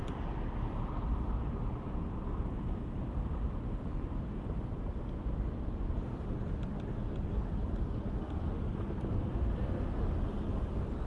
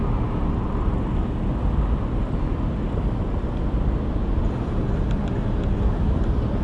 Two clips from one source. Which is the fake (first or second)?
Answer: first